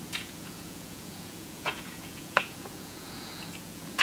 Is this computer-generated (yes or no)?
yes